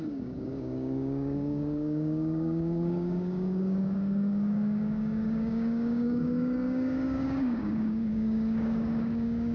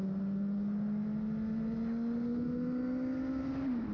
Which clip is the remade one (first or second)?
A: first